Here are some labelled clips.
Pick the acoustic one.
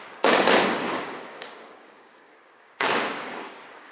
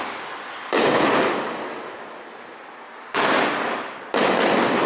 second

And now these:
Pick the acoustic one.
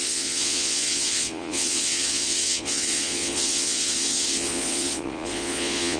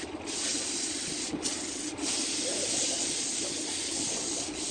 second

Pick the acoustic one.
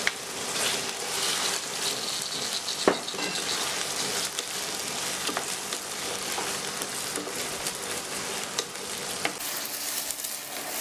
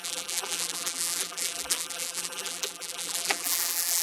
first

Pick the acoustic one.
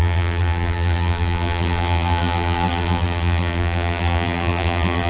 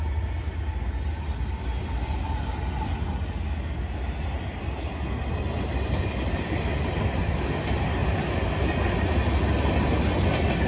second